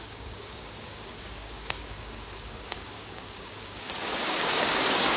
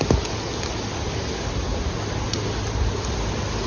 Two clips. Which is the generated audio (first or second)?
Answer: first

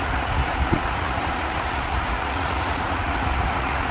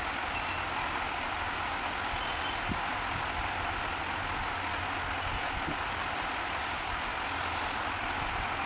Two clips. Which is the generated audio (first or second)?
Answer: first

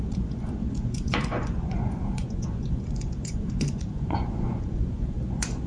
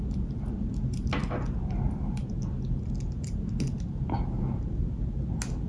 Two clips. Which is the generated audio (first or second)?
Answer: first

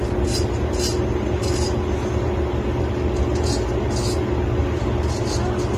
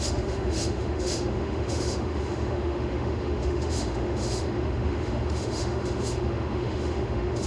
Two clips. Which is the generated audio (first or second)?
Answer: second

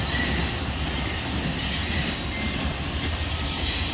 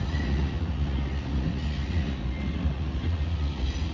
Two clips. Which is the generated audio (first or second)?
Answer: second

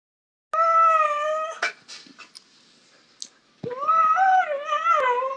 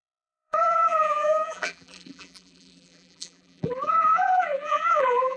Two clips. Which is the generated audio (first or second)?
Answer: second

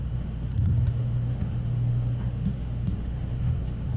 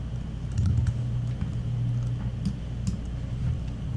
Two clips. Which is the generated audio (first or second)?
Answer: first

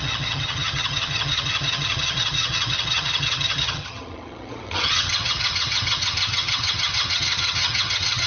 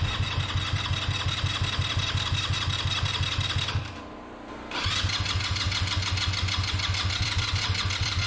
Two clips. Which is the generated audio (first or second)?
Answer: first